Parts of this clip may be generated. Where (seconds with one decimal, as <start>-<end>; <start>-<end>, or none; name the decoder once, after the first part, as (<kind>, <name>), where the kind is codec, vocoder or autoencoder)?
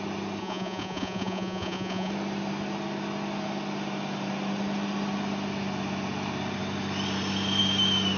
0.4-2.1 (vocoder, Vocos)